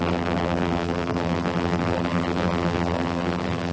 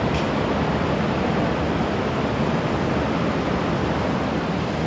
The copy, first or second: first